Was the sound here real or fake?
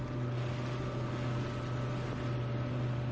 real